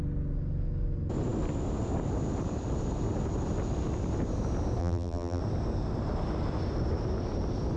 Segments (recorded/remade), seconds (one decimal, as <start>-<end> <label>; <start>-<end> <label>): 0.0-4.8 recorded; 4.8-5.4 remade; 5.4-7.8 recorded